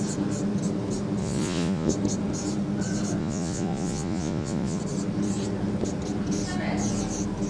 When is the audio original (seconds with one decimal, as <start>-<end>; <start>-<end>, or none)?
0.0-1.2; 1.9-3.2; 4.8-7.5